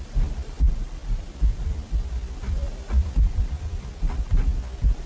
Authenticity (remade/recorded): recorded